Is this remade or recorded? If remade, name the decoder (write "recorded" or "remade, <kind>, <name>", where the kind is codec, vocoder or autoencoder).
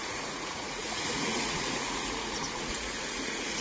remade, vocoder, Vocos